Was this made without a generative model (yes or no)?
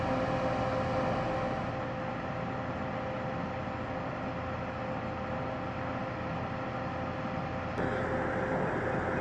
yes